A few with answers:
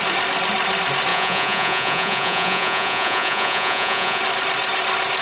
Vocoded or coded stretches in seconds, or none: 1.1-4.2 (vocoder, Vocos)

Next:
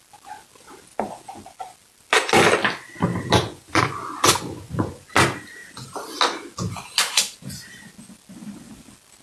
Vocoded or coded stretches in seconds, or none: 3.4-4.9 (vocoder, Vocos)

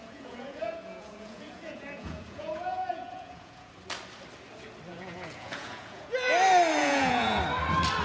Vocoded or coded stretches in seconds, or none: 0.0-3.7 (vocoder, Vocos); 4.9-6.3; 6.8-7.4

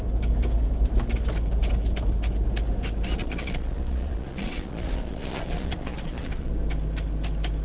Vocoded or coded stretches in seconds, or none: 3.2-6.5 (vocoder, Vocos)

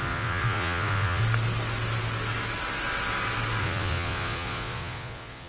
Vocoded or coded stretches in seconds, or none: 0.0-1.2 (vocoder, Vocos); 3.6-5.5

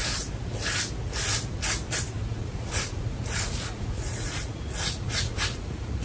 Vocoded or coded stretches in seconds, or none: 2.3-6.0 (vocoder, Vocos)

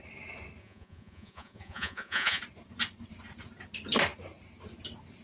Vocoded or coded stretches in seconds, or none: 0.6-2.4 (vocoder, Vocos)

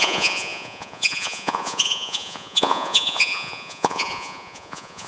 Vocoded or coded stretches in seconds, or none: 0.0-5.1 (vocoder, Vocos)